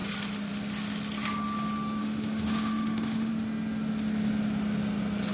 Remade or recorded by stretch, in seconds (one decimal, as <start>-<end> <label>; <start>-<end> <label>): 0.0-2.0 recorded; 2.0-3.3 remade; 3.3-5.3 recorded